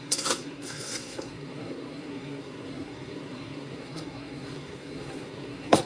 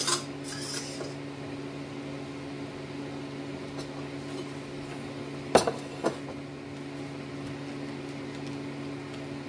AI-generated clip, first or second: first